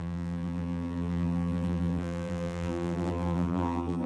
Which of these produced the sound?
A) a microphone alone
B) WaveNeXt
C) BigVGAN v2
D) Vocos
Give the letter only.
C